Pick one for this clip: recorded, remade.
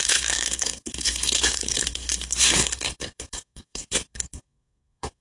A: remade